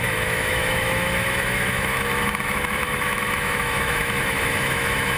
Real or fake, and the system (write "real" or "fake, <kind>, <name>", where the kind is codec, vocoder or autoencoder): fake, autoencoder, DAC-VAE